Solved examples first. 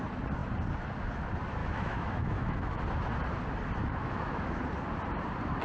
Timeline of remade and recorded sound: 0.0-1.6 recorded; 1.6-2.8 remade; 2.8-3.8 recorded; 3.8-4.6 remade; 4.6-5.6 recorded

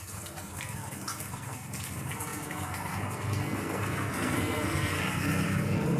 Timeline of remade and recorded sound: 0.0-6.0 remade

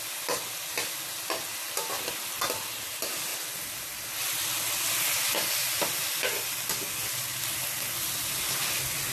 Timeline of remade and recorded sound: 0.0-9.1 recorded

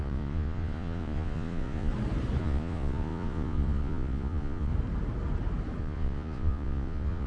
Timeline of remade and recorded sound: 0.0-1.9 remade; 1.9-2.4 recorded; 2.4-4.7 remade; 4.7-5.8 recorded; 5.8-7.3 remade

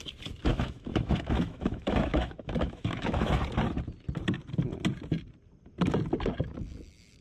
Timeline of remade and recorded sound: 0.0-0.5 recorded; 0.5-3.4 remade; 3.4-7.2 recorded

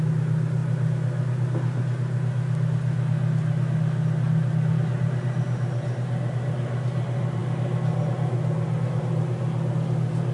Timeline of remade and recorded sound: 0.0-10.3 recorded

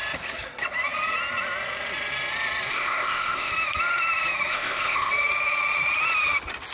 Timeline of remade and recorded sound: 0.0-2.7 recorded; 2.7-3.5 remade; 3.5-4.5 recorded; 4.5-5.1 remade; 5.1-6.7 recorded